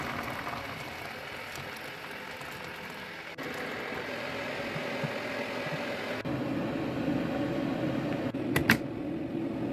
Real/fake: real